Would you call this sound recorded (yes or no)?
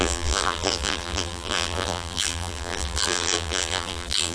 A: no